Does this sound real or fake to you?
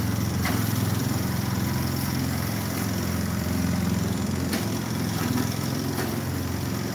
fake